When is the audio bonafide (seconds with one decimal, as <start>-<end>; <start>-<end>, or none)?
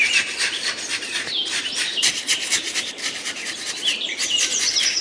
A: none